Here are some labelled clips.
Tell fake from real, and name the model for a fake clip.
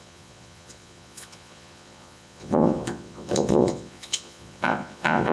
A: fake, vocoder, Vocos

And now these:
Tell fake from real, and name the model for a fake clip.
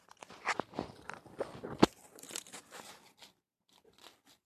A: real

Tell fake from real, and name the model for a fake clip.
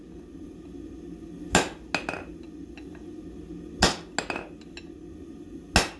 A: real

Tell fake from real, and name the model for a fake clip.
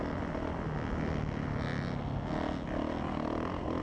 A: real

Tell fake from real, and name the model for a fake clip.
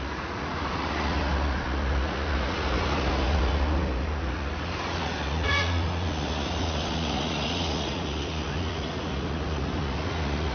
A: fake, vocoder, Vocos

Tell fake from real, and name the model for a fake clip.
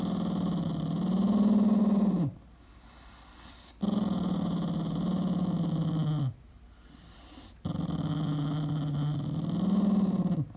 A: real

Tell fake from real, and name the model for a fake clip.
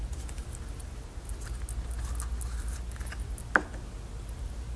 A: real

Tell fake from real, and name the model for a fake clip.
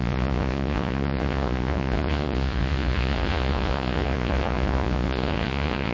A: fake, vocoder, Vocos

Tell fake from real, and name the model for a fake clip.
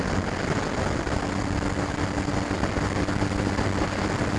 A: real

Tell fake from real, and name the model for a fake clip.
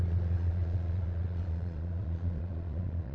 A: fake, vocoder, Vocos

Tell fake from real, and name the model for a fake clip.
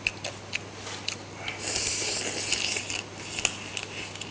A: real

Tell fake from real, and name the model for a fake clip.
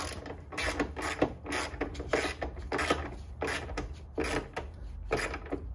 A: real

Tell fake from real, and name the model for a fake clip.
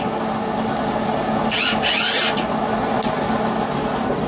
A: real